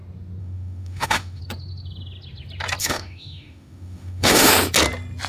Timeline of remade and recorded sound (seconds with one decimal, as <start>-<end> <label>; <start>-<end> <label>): 0.0-0.4 recorded; 0.4-1.4 remade; 1.4-2.8 recorded; 2.8-4.5 remade; 4.5-5.3 recorded